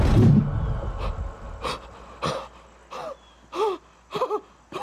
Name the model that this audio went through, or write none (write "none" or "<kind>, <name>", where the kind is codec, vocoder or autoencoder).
none